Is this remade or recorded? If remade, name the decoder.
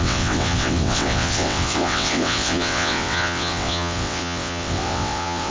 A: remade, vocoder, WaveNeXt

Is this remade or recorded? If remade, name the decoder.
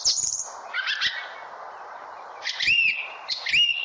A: recorded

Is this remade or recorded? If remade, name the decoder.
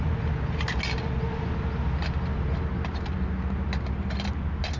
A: recorded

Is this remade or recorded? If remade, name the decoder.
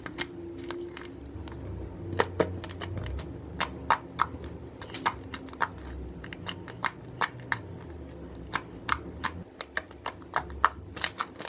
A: recorded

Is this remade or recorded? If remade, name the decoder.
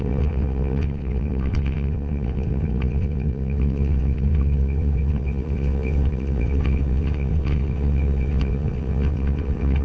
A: remade, vocoder, WaveNeXt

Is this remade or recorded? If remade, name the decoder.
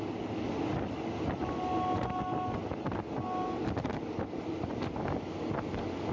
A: recorded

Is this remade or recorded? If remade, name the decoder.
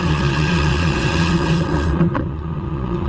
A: remade, vocoder, WaveNeXt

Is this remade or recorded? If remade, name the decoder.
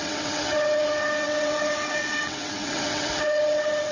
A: remade, vocoder, WaveNeXt